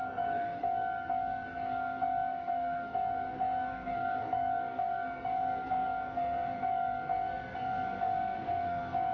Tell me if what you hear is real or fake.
fake